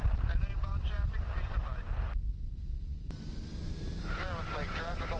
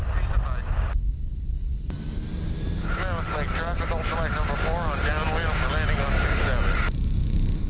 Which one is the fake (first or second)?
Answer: first